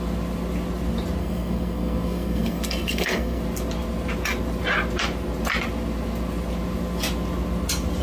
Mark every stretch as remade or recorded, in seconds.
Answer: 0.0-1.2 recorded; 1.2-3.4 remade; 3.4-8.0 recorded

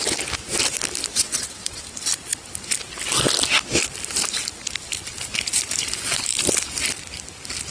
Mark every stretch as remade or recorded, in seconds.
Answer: 0.0-1.1 recorded; 1.1-1.8 remade; 1.8-7.7 recorded

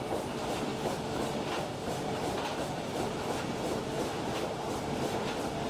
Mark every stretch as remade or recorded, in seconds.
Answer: 0.0-0.7 remade; 0.7-1.6 recorded; 1.6-5.7 remade

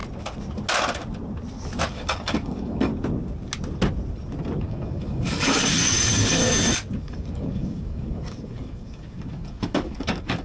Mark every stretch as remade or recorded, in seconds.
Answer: 0.0-1.9 recorded; 1.9-2.9 remade; 2.9-4.6 recorded; 4.6-6.4 remade; 6.4-7.0 recorded; 7.0-10.4 remade

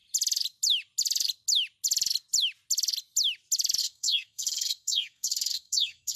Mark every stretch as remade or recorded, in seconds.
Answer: 0.0-3.8 recorded; 3.8-6.2 remade

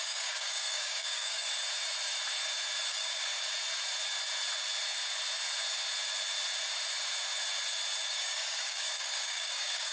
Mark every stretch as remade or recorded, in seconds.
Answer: 0.0-1.5 remade; 1.5-2.9 recorded; 2.9-3.3 remade; 3.3-8.1 recorded; 8.1-9.9 remade